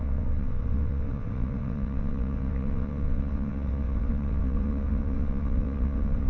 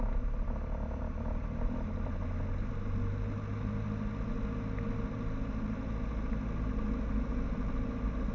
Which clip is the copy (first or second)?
first